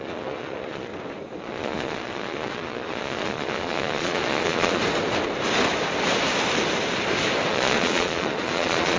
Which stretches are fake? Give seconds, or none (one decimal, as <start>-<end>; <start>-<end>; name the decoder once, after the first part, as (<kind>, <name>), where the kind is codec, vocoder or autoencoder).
0.0-0.9 (vocoder, Vocos); 1.4-4.8; 7.5-9.0